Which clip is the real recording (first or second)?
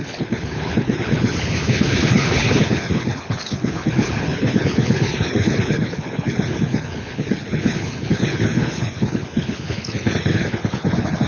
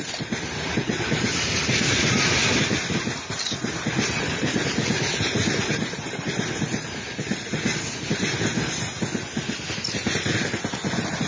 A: second